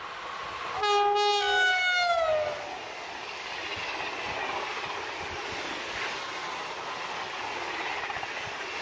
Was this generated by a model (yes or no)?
no